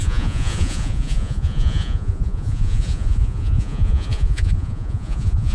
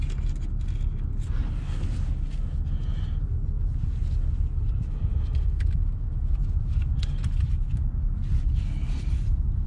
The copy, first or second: first